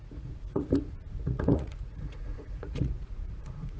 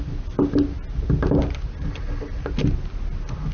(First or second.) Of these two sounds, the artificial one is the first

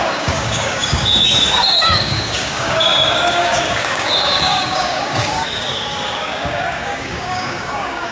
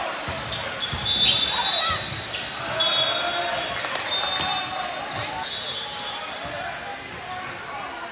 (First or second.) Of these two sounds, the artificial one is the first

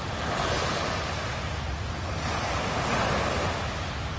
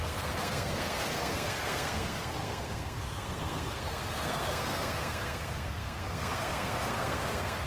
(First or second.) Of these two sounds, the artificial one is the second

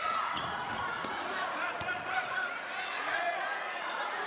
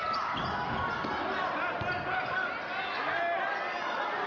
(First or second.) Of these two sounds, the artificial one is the first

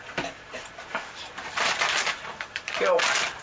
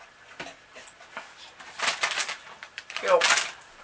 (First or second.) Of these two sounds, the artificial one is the first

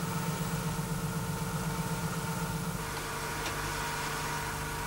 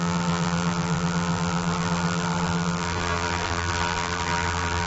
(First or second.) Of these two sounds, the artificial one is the second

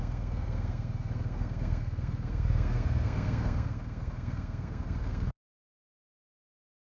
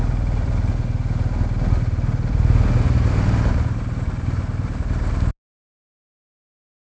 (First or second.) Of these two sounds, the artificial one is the first